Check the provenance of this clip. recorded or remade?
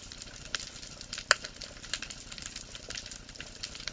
recorded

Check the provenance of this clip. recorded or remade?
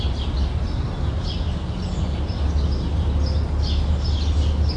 recorded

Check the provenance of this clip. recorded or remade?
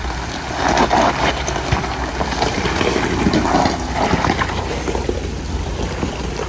recorded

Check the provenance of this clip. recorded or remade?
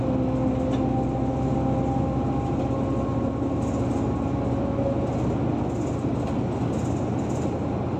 recorded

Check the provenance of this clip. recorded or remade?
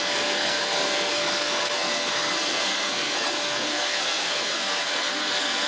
remade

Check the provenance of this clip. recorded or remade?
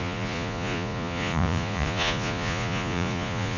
remade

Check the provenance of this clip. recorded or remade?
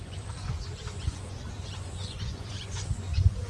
remade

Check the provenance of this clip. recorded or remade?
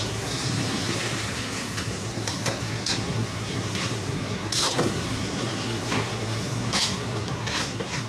remade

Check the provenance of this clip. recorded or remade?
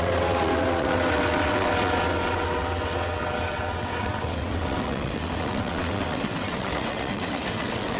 remade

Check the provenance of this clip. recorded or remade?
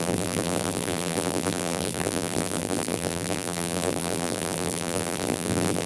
remade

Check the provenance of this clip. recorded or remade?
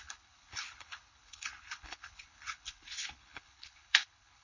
remade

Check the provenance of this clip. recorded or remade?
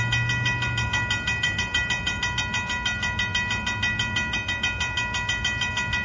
recorded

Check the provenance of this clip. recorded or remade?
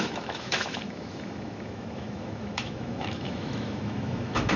remade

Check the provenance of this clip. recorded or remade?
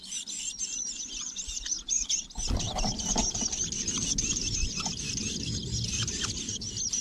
remade